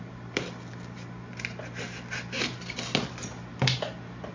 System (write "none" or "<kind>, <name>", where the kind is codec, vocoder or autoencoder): none